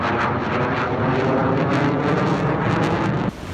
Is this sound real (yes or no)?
yes